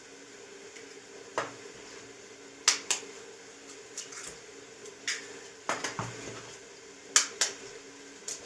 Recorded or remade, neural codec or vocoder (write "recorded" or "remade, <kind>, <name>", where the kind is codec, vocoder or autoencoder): recorded